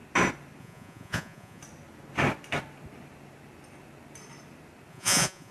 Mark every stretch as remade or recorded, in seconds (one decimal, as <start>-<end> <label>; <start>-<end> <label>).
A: 0.0-0.6 recorded; 0.6-1.6 remade; 1.6-4.9 recorded; 4.9-5.5 remade